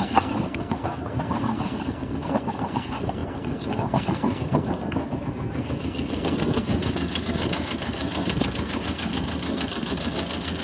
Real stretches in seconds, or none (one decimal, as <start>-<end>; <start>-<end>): none